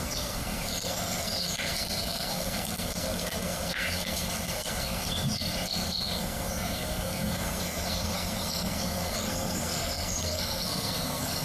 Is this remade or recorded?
remade